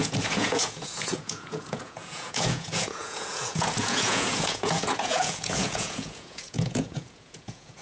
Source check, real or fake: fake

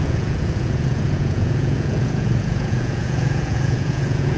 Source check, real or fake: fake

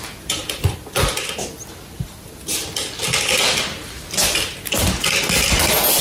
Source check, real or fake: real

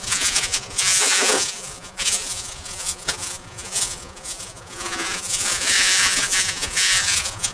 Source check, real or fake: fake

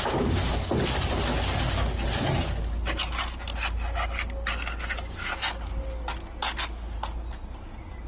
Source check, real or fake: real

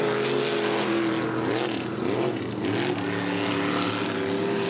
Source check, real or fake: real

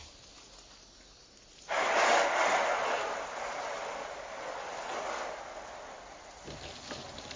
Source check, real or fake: real